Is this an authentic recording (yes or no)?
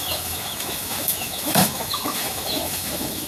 no